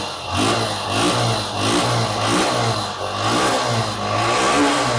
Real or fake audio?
real